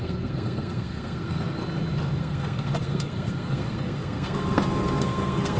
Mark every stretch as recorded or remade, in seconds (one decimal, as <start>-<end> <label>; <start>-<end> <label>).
0.0-1.6 remade; 1.6-2.2 recorded; 2.2-5.6 remade

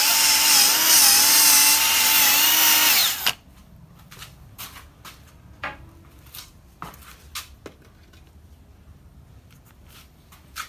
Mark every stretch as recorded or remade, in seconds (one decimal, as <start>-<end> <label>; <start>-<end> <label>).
0.0-10.7 recorded